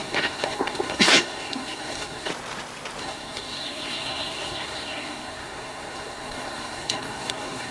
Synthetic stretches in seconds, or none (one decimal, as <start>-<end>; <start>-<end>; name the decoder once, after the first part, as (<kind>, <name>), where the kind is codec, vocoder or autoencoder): 0.0-2.3 (codec, SNAC); 3.0-7.7

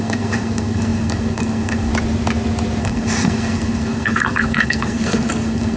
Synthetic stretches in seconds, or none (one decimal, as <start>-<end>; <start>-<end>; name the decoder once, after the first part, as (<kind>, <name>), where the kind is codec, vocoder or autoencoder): 0.0-1.9 (codec, SNAC); 2.8-5.8

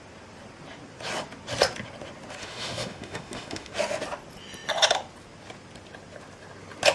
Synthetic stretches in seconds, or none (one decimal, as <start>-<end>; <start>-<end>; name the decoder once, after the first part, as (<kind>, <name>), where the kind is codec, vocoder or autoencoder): 2.4-3.7 (autoencoder, DAC-VAE)

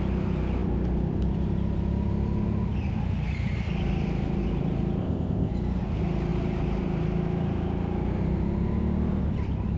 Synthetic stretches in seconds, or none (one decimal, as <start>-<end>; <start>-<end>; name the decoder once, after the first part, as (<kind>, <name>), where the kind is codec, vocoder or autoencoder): 5.0-5.5 (codec, ZipCodec)

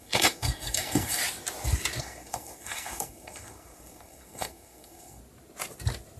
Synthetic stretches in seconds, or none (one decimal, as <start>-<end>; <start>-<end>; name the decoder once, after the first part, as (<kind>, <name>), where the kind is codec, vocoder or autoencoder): 0.0-1.2 (codec, SNAC); 2.0-5.2

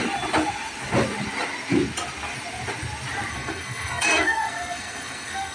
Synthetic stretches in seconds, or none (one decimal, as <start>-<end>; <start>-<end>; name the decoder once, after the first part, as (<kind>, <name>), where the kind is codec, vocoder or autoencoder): 3.3-5.5 (codec, SNAC)

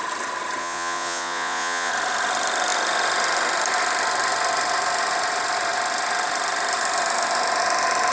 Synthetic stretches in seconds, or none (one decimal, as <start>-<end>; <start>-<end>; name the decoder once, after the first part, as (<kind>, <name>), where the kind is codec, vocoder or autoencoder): 0.6-1.9 (vocoder, Vocos)

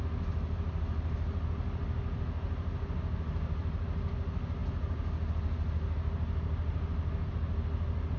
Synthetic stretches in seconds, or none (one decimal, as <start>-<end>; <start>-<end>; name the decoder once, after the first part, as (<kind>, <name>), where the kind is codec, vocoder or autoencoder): none